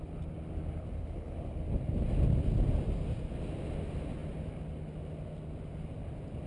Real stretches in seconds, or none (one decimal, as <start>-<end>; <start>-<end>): 0.0-6.5